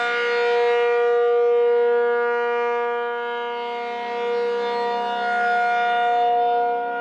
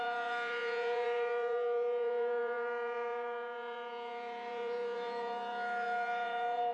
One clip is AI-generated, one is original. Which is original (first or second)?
first